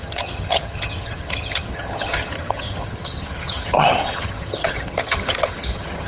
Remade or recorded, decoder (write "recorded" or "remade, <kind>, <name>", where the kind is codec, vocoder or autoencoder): remade, vocoder, HiFi-GAN